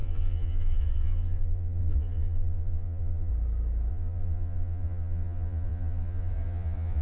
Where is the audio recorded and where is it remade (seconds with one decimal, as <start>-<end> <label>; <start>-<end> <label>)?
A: 0.0-3.3 remade; 3.3-3.9 recorded; 3.9-7.0 remade